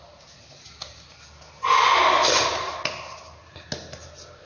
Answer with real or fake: real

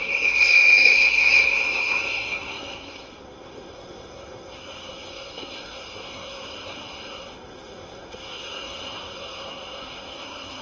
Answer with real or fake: fake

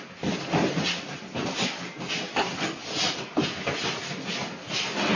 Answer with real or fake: real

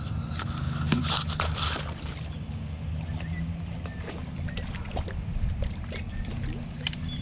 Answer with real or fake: real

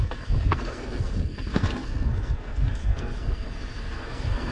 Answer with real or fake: fake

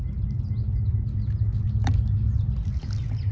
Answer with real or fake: real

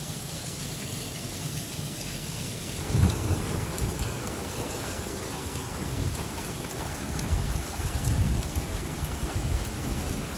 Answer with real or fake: fake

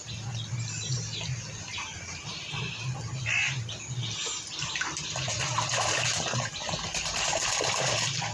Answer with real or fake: real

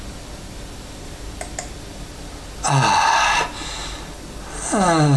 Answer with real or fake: real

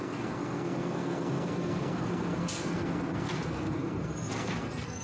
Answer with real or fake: fake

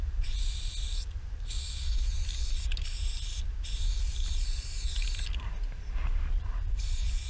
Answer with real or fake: real